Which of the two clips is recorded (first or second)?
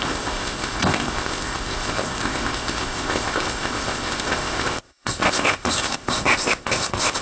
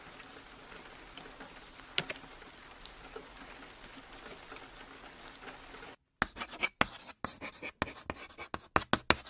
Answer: second